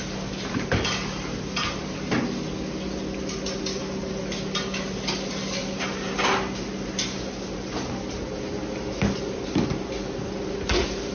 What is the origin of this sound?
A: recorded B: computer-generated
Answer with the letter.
A